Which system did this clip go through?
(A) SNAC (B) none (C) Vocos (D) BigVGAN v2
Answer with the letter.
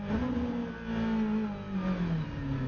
B